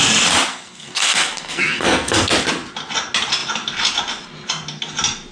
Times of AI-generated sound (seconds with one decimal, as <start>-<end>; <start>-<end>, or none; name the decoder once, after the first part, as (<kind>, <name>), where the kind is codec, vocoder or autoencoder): 0.5-2.3 (codec, SNAC)